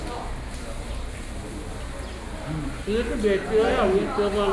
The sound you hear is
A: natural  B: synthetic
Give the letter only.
A